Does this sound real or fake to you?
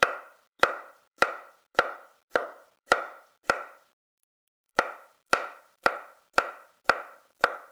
fake